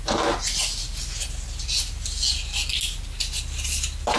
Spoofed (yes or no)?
no